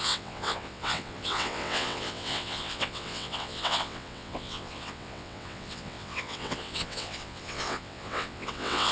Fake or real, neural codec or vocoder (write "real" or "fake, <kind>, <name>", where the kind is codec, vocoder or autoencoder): fake, vocoder, WaveNeXt